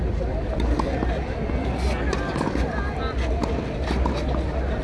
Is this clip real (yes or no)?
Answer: yes